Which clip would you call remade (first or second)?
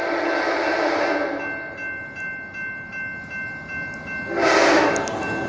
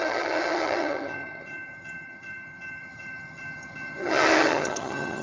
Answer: second